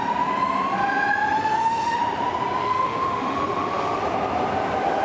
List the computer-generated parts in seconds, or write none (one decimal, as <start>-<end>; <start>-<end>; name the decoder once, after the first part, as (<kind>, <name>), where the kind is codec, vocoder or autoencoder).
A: 1.4-2.0 (autoencoder, DAC-VAE); 2.6-4.0